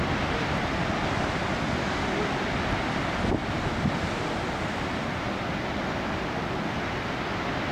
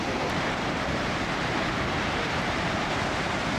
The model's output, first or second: second